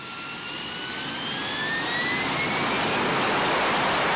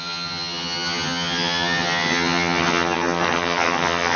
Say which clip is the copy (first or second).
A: second